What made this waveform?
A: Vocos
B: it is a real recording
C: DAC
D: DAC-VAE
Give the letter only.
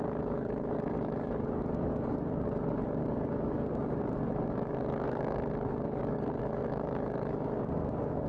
C